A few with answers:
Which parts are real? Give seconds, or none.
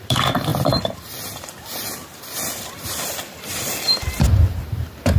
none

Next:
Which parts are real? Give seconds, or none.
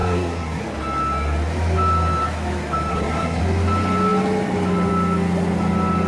0.6-2.9; 3.4-6.1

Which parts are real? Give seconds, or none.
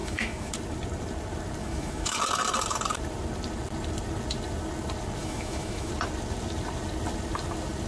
0.5-1.6; 2.2-5.2; 5.9-7.9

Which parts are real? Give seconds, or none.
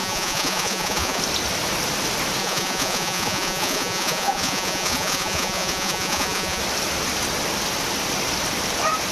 1.2-2.4; 6.6-9.1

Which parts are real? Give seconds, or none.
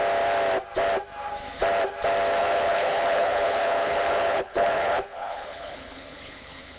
0.0-2.4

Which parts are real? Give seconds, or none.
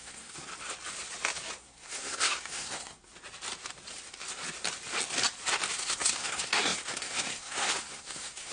0.5-1.6; 3.1-5.7